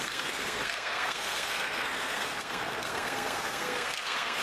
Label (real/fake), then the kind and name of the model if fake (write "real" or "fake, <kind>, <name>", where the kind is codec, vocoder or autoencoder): fake, codec, SNAC